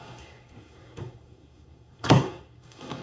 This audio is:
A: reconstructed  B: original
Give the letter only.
A